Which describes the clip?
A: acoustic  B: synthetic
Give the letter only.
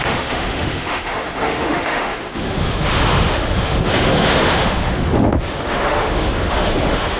B